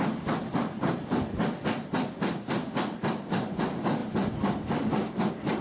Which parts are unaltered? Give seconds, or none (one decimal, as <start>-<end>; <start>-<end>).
0.0-5.6